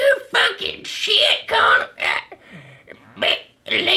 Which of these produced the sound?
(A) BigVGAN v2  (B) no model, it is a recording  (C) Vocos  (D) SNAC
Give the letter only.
A